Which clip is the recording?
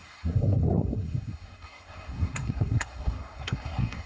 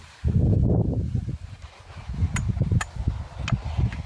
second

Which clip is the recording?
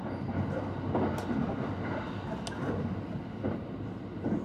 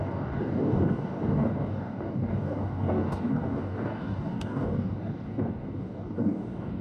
first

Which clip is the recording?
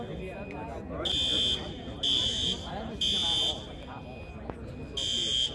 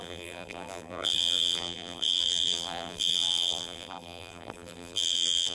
first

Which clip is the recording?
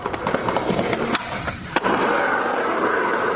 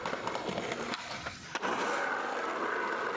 second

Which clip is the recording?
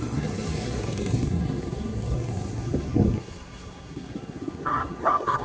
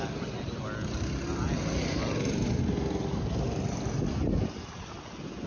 second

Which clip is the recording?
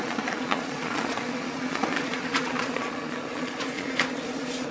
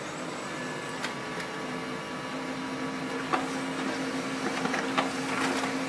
second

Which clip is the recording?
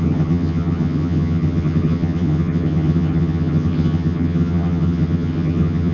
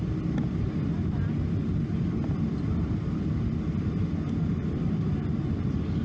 second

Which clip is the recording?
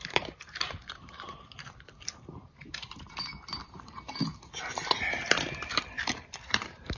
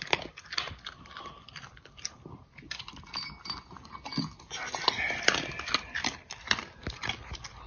second